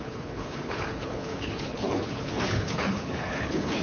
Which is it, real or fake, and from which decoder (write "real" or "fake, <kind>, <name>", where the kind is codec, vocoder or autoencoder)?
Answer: fake, codec, HILCodec